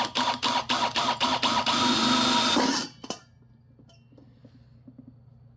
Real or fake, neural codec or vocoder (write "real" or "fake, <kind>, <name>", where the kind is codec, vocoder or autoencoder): real